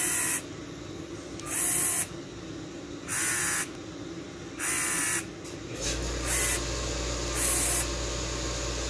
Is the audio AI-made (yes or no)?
no